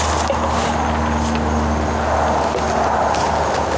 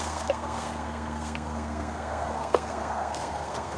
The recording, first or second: first